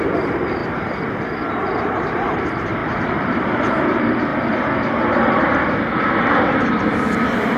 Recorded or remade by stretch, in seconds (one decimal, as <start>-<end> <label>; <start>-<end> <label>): 0.0-0.6 remade; 0.6-1.5 recorded; 1.5-4.3 remade; 4.3-5.4 recorded; 5.4-7.6 remade